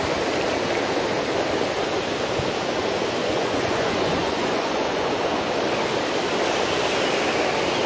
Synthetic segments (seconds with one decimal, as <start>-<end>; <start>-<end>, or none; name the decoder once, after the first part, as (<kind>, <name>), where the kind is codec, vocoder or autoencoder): 3.2-5.1 (vocoder, Vocos)